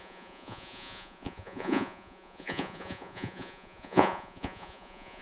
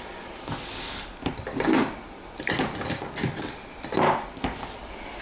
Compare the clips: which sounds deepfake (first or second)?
first